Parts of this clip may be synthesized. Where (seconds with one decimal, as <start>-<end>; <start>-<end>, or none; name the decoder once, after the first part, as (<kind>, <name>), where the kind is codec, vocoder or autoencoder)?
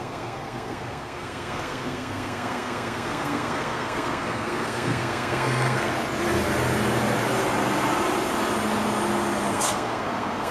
0.0-5.9 (codec, SNAC); 9.5-10.5